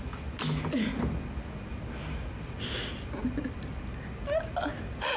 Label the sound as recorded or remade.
recorded